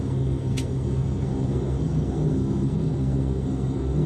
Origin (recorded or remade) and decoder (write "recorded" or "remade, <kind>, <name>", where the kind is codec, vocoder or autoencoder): remade, codec, SNAC